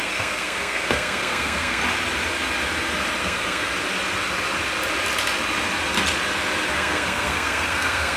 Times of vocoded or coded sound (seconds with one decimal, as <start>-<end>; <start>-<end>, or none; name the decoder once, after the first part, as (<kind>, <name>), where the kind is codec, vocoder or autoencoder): 0.0-1.8 (codec, SNAC); 3.2-3.7; 6.7-8.2